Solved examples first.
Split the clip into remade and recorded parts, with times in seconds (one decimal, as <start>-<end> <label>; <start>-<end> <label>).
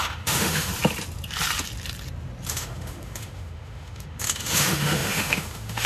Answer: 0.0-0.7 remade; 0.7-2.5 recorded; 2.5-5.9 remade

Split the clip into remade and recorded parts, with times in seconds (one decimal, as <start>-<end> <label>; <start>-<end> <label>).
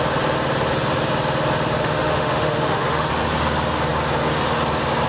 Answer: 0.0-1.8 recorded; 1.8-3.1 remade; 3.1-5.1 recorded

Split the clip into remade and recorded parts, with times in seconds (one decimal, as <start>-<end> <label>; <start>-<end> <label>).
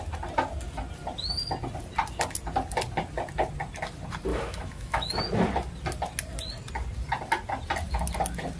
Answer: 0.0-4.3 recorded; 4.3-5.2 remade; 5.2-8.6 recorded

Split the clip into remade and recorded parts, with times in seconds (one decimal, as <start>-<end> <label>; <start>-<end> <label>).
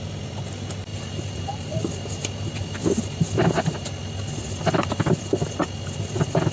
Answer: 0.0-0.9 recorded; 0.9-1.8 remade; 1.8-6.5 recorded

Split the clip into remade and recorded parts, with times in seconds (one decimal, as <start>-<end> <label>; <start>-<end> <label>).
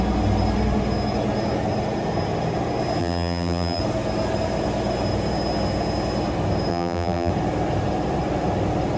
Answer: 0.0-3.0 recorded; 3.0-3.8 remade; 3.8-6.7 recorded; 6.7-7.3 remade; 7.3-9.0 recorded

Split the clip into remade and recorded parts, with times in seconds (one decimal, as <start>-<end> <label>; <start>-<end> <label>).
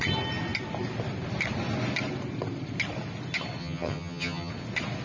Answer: 0.0-3.6 recorded; 3.6-4.5 remade; 4.5-5.0 recorded